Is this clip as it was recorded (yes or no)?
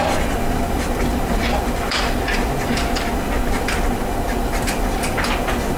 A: yes